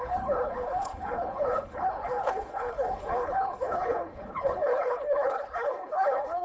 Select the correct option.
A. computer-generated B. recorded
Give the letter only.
A